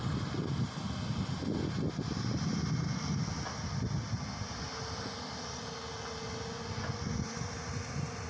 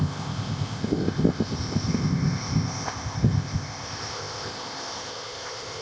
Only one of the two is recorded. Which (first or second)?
first